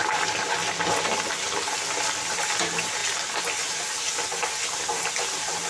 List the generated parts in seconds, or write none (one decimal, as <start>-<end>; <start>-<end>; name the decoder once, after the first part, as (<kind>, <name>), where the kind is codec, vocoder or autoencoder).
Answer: none